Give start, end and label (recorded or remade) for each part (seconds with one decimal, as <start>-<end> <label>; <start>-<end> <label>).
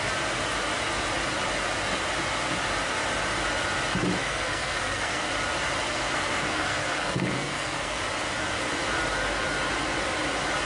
0.0-4.2 recorded; 4.2-5.3 remade; 5.3-5.9 recorded; 5.9-8.0 remade; 8.0-10.7 recorded